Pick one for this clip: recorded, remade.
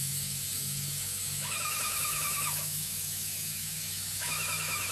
remade